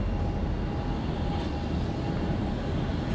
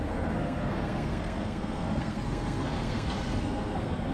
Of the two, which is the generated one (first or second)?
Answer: second